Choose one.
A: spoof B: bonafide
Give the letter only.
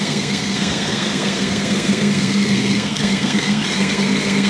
A